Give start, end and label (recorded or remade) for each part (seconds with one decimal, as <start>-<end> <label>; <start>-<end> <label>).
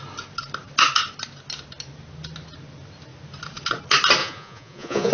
0.0-4.2 recorded; 4.2-5.1 remade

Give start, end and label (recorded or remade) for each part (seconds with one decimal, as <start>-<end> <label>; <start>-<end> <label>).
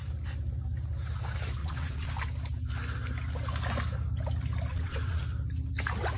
0.0-1.6 recorded; 1.6-2.1 remade; 2.1-4.7 recorded; 4.7-5.2 remade; 5.2-6.2 recorded